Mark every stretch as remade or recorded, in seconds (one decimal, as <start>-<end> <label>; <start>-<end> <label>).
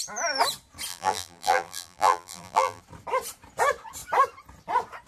0.0-0.9 recorded; 0.9-2.8 remade; 2.8-5.1 recorded